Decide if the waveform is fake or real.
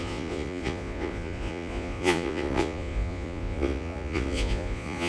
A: fake